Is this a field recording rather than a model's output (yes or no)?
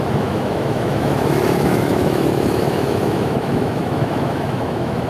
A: no